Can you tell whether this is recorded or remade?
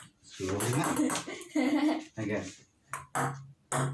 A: recorded